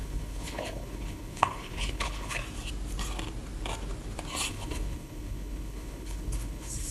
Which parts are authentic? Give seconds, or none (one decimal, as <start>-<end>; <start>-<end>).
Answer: 2.4-4.5